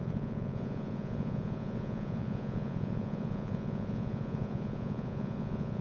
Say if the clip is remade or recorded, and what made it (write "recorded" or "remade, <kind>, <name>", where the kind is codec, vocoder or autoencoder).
remade, vocoder, Vocos